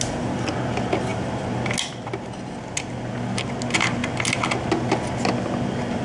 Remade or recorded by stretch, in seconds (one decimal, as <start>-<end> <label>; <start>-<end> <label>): 0.0-6.0 recorded